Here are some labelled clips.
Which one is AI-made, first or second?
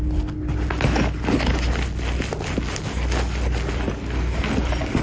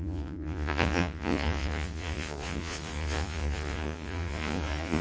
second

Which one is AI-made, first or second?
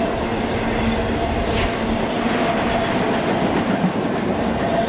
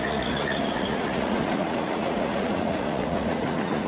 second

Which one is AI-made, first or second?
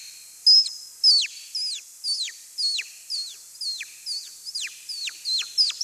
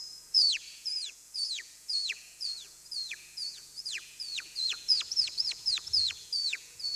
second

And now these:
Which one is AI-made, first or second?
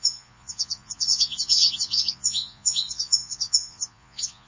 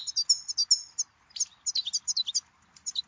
first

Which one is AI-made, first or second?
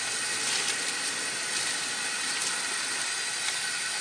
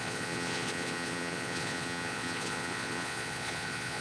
second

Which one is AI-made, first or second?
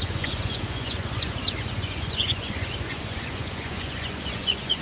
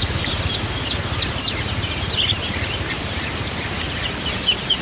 first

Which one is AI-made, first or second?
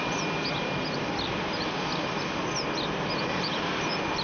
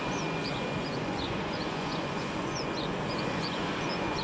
second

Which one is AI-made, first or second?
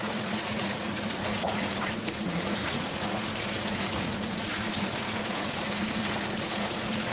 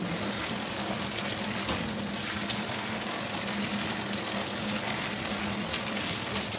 first